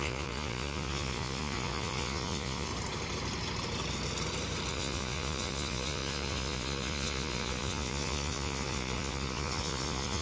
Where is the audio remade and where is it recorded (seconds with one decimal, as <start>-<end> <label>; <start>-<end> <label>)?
0.0-2.7 remade; 2.7-4.7 recorded; 4.7-10.2 remade